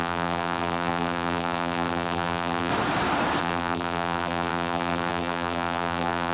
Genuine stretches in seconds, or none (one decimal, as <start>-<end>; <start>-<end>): 2.7-3.4